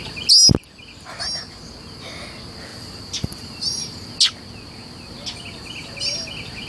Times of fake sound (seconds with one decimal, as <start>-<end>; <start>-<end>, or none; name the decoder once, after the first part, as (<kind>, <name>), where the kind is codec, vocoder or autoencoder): 2.7-4.1 (vocoder, BigVGAN v2)